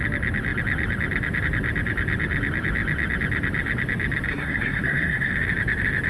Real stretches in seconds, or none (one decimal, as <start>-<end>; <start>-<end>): 0.0-4.3; 5.3-6.1